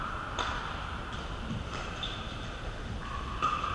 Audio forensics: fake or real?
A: real